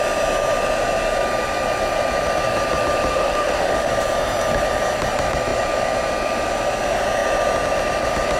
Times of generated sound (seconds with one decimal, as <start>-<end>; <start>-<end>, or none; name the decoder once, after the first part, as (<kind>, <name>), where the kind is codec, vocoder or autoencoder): 3.1-3.9 (autoencoder, DAC-VAE)